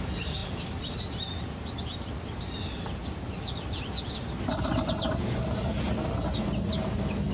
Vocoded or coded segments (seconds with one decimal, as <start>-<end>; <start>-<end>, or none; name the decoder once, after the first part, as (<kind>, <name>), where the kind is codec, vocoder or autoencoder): 0.0-0.4 (vocoder, BigVGAN v2); 1.0-7.3